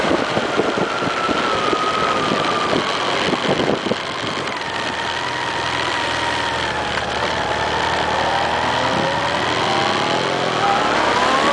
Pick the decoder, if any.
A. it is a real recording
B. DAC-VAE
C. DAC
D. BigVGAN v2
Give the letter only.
A